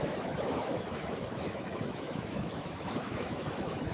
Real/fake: fake